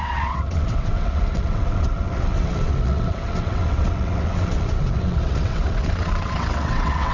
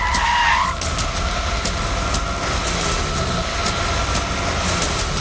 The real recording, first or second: second